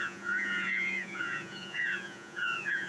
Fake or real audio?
fake